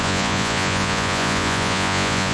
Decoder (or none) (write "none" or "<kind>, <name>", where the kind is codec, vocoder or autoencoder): vocoder, Vocos